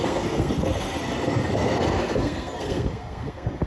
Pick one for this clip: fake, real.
fake